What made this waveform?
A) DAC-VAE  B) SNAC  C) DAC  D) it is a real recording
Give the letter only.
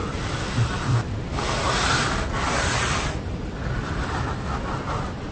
D